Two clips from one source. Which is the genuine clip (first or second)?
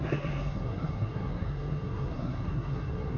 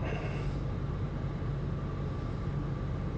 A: second